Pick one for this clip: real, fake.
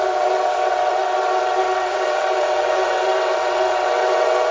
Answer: fake